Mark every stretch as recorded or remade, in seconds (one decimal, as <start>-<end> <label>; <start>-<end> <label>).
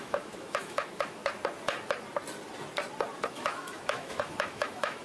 0.0-1.2 remade; 1.2-3.3 recorded; 3.3-5.0 remade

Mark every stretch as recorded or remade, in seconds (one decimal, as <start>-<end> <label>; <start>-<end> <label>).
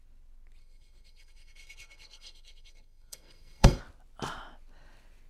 0.0-0.6 recorded; 0.6-3.8 remade; 3.8-5.3 recorded